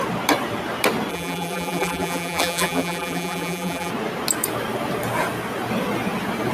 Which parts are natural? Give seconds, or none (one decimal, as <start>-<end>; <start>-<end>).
0.0-1.1; 3.9-6.5